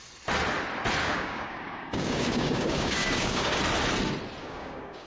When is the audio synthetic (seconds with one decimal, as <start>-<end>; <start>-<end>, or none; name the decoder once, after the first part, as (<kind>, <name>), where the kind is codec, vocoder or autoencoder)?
1.0-3.6 (codec, DAC); 4.4-5.1